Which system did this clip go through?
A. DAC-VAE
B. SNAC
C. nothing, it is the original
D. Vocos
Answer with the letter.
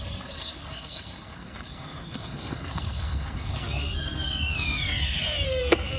B